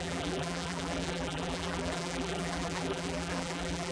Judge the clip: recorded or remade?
remade